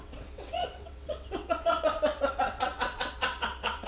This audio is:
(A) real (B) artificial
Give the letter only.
B